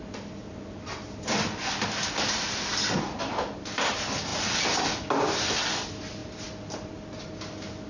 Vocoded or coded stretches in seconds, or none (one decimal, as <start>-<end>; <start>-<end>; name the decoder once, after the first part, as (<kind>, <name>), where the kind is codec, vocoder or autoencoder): none